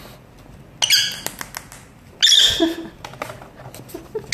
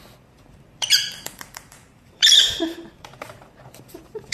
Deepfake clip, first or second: second